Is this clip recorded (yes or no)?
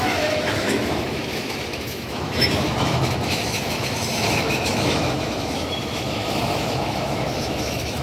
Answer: no